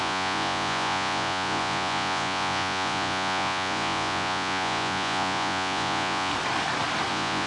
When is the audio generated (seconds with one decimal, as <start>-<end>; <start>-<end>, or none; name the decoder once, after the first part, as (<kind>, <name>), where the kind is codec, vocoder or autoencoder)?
0.0-6.3 (vocoder, Vocos); 7.1-7.5